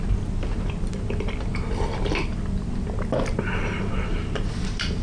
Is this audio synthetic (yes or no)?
no